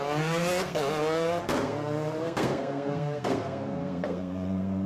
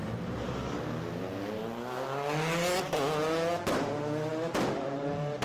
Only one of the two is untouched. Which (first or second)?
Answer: second